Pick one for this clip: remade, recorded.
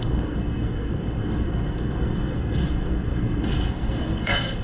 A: remade